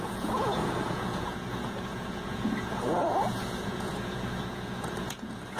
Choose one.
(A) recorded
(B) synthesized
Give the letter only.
B